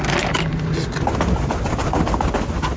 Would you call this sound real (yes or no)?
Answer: yes